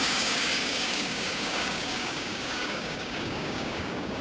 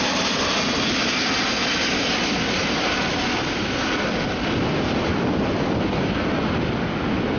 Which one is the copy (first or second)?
first